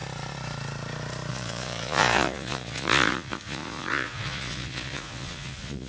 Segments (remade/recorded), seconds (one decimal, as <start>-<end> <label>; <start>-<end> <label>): 0.0-1.3 recorded; 1.3-5.9 remade